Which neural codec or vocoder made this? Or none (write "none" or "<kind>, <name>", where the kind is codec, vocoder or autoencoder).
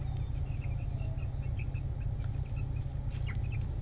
none